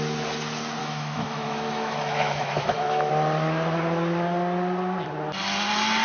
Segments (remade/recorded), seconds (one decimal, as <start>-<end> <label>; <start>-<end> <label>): 0.0-0.8 recorded; 0.8-3.1 remade; 3.1-6.0 recorded

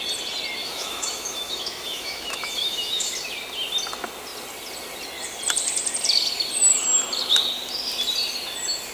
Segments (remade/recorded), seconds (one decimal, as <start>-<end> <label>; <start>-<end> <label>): 0.0-0.6 recorded; 0.6-3.1 remade; 3.1-8.9 recorded